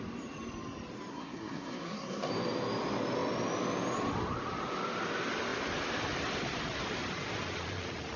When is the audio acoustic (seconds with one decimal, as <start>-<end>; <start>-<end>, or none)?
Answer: 0.0-1.1; 2.3-8.2